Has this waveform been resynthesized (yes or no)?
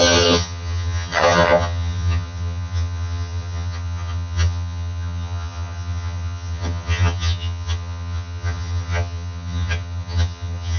yes